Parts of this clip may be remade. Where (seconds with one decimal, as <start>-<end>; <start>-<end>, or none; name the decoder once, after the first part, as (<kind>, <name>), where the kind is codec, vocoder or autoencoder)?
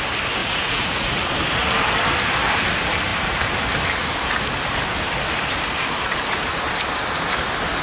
0.4-1.3 (vocoder, Vocos)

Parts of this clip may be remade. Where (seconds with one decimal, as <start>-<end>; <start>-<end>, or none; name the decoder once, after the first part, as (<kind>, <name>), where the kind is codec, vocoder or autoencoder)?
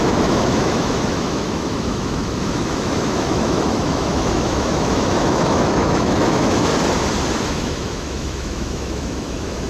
0.0-6.7 (autoencoder, DAC-VAE); 7.4-9.7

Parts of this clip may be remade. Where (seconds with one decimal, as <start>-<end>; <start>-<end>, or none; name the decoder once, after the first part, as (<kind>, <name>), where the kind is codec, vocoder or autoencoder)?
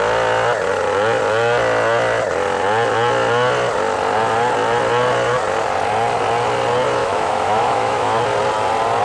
7.0-8.2 (autoencoder, DAC-VAE)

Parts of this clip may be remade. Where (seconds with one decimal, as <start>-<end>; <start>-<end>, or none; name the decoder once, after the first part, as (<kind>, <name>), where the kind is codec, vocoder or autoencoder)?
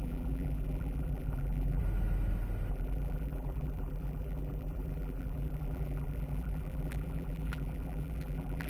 0.0-1.8 (vocoder, BigVGAN v2); 2.7-8.7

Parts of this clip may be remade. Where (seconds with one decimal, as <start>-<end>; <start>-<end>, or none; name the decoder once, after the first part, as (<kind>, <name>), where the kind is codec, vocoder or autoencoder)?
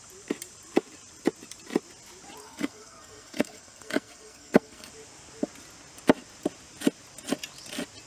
2.4-4.9 (codec, SNAC)